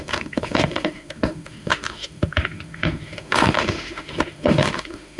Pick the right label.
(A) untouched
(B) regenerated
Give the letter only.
B